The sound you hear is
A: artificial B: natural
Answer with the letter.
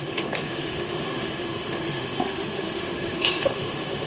A